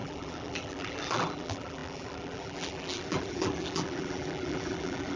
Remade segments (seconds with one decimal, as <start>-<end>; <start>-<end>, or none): 0.0-5.2